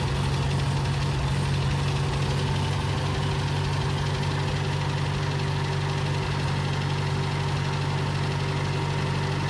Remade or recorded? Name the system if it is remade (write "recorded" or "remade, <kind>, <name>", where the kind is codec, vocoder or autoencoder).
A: recorded